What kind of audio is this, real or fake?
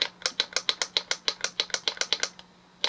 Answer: real